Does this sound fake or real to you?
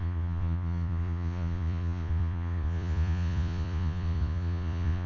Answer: fake